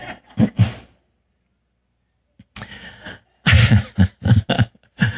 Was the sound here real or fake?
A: real